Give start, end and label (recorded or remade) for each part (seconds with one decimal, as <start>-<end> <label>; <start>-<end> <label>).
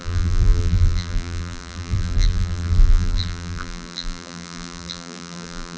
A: 0.0-5.8 remade